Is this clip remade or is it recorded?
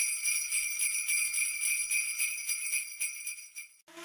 recorded